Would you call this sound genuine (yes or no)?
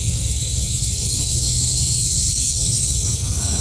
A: no